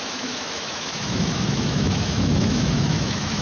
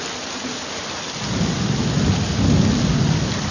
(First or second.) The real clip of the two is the second